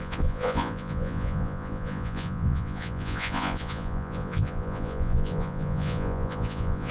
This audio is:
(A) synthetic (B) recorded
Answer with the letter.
A